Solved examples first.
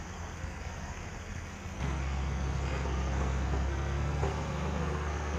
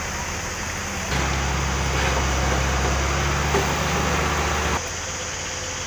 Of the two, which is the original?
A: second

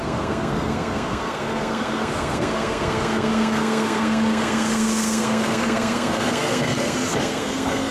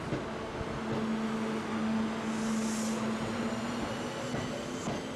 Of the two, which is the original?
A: second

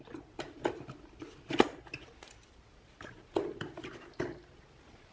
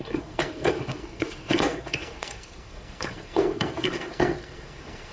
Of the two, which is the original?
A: first